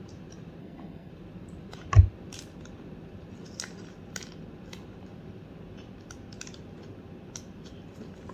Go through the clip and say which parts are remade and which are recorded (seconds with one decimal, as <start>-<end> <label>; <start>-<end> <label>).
0.0-0.6 recorded; 0.6-1.1 remade; 1.1-8.3 recorded